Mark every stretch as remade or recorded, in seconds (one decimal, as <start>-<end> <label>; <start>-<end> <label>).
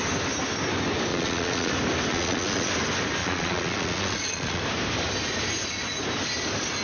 0.0-1.1 recorded; 1.1-1.7 remade; 1.7-2.1 recorded; 2.1-2.7 remade; 2.7-3.2 recorded; 3.2-4.6 remade; 4.6-6.8 recorded